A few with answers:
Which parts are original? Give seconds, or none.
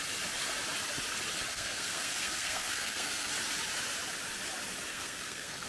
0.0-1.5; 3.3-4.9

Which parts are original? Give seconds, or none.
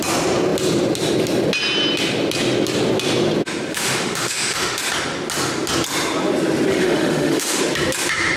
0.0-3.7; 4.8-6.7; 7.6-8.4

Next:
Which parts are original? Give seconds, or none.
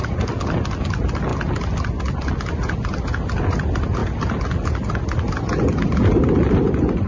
0.0-7.1